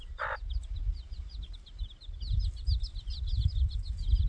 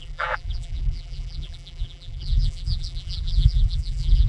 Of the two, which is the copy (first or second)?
second